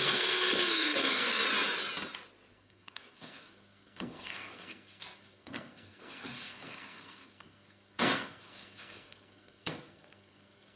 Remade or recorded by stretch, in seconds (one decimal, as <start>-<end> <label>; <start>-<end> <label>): 0.0-1.4 remade; 1.4-2.5 recorded; 2.5-10.8 remade